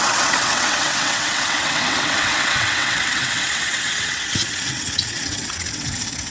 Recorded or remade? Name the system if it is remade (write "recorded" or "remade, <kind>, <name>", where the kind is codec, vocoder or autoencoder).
remade, vocoder, WaveNeXt